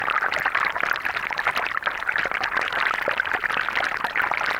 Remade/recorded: recorded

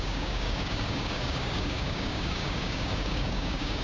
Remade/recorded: remade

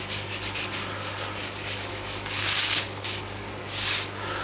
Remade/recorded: remade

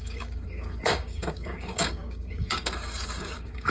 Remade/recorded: remade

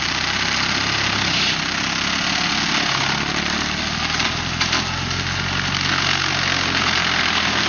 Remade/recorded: recorded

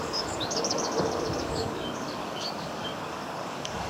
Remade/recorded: remade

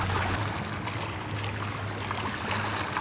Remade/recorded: recorded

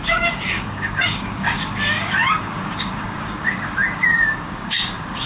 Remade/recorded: remade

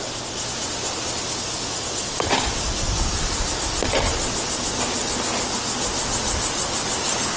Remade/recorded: recorded